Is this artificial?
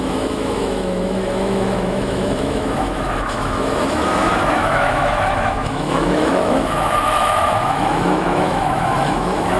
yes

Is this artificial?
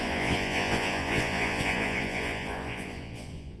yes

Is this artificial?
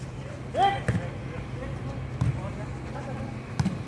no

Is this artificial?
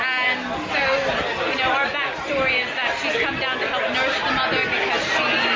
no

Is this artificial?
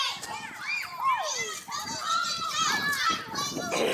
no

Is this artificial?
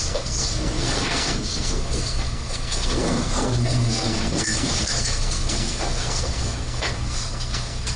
yes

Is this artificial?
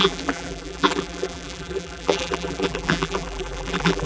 yes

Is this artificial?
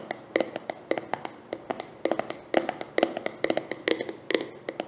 no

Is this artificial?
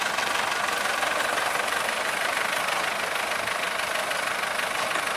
no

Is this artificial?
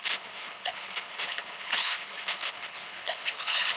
yes